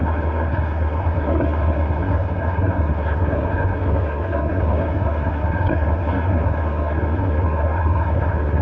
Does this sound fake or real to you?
fake